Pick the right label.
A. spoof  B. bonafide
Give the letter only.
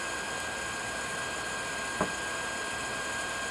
A